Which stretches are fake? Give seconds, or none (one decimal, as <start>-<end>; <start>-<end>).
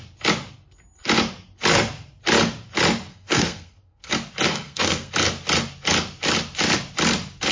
3.1-4.1; 4.5-5.1